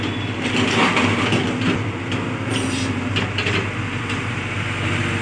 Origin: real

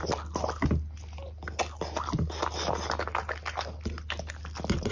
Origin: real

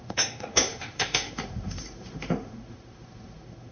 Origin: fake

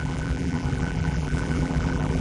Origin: fake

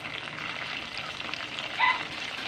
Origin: real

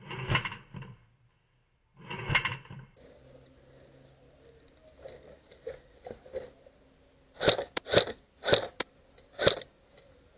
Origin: real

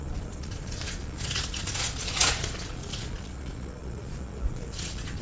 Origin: fake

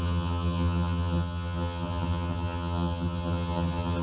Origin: fake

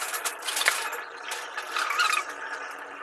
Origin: real